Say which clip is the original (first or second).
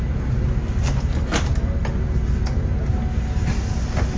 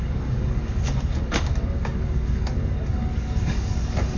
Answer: first